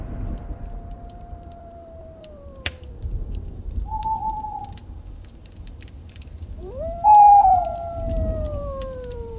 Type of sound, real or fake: fake